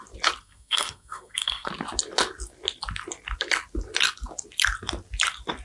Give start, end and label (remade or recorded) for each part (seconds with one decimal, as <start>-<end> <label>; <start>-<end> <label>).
0.0-0.4 recorded; 0.4-1.7 remade; 1.7-5.6 recorded